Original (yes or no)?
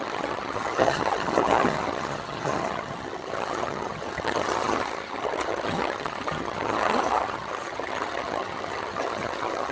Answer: no